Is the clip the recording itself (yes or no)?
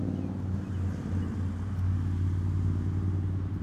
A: yes